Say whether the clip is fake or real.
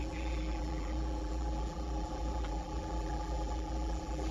fake